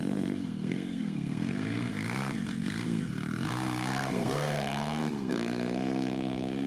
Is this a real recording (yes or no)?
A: no